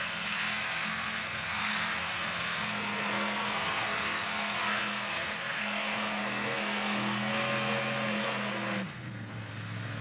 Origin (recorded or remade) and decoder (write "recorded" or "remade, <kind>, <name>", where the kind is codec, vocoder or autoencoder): remade, codec, SNAC